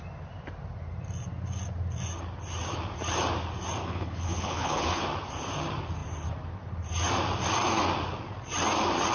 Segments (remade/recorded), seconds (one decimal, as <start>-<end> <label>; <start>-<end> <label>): 0.0-3.8 recorded; 3.8-5.0 remade; 5.0-9.1 recorded